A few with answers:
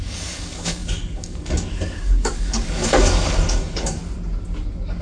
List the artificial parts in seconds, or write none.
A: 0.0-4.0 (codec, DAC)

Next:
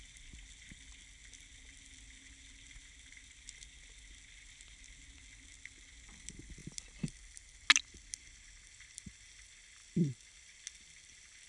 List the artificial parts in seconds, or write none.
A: none

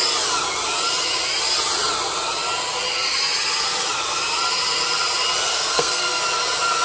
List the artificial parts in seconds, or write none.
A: 5.5-6.2 (codec, SNAC)

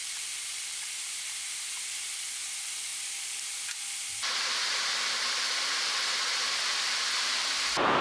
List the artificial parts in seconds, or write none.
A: 0.0-1.0 (vocoder, BigVGAN v2)

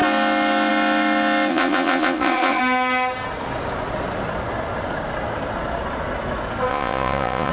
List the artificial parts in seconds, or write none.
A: 1.5-2.6 (vocoder, Vocos); 6.7-7.5

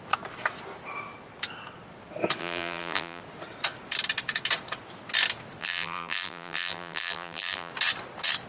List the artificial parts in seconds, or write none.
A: 2.4-3.2 (vocoder, BigVGAN v2); 5.6-7.7

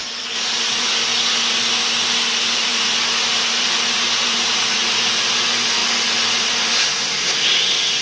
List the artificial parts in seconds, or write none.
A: 0.0-1.1 (vocoder, BigVGAN v2); 1.8-2.7; 3.3-5.8; 6.4-8.0

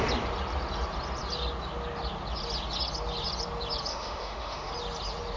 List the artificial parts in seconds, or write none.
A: 3.9-4.7 (autoencoder, DAC-VAE)